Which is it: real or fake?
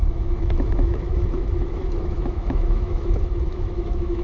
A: fake